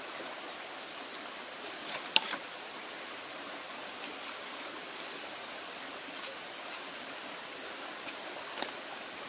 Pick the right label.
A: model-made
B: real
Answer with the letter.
B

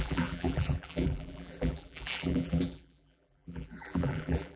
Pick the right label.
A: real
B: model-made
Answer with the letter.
B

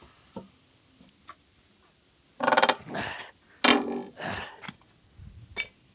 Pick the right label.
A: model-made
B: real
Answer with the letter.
B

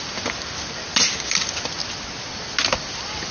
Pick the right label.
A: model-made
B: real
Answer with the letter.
B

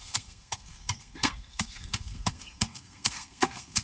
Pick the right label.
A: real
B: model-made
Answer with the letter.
B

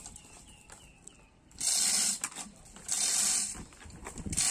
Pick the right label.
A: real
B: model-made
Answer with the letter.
A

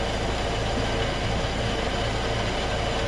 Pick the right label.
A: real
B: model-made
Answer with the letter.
A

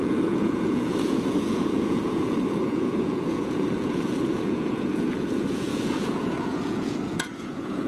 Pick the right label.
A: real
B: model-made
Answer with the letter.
B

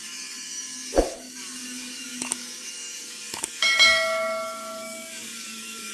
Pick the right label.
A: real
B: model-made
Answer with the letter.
B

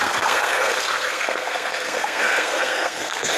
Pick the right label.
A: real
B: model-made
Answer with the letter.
B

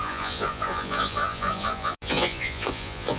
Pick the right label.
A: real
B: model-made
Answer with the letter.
B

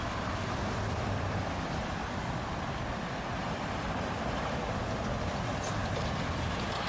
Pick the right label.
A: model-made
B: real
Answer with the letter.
A